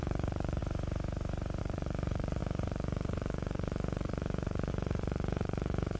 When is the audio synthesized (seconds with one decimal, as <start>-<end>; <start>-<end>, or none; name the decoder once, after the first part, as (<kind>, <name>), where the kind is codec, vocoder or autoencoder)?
0.0-0.6 (vocoder, Vocos); 1.6-6.0

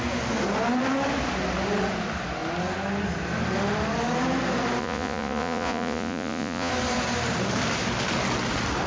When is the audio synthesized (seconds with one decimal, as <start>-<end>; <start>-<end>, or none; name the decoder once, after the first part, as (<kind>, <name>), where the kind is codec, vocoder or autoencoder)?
4.8-6.7 (vocoder, Vocos)

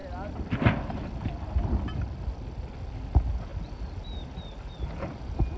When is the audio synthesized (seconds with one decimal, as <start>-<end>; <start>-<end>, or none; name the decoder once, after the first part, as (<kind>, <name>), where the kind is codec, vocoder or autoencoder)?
none

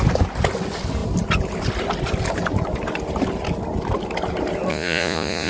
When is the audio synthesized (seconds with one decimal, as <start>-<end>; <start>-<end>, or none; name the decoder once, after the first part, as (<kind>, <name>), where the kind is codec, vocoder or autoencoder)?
4.7-5.5 (vocoder, Vocos)

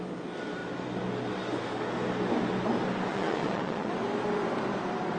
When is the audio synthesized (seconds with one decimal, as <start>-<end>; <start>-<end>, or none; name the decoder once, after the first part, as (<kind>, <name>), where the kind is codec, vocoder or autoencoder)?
3.1-3.9 (vocoder, Vocos)